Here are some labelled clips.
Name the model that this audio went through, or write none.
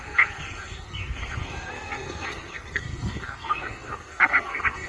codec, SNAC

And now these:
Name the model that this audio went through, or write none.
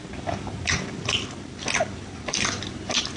none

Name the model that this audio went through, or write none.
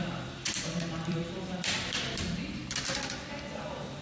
vocoder, BigVGAN v2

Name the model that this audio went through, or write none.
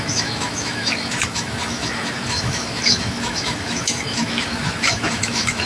autoencoder, DAC-VAE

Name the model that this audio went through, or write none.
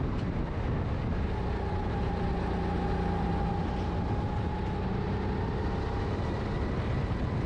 none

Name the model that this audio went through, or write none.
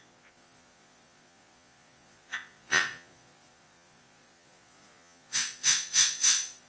vocoder, Vocos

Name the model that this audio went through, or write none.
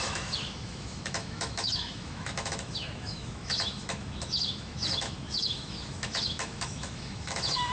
autoencoder, DAC-VAE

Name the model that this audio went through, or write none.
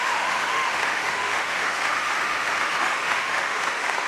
autoencoder, DAC-VAE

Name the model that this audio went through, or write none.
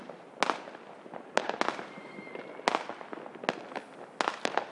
none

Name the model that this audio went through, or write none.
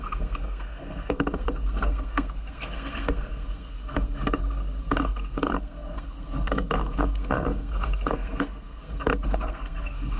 codec, SNAC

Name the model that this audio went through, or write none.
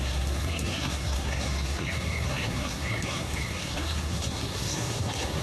codec, SNAC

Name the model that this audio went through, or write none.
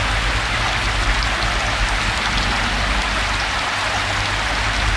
none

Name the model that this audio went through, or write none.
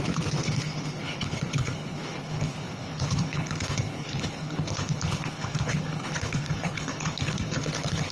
codec, HILCodec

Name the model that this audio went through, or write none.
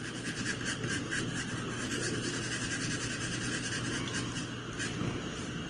none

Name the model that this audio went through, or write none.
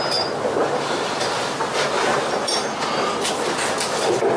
none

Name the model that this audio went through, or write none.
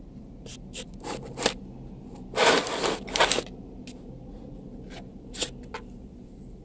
none